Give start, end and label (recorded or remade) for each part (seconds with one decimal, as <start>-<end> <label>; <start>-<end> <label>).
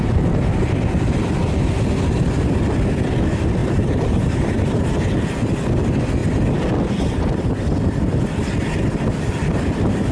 0.0-3.6 recorded; 3.6-5.4 remade; 5.4-10.1 recorded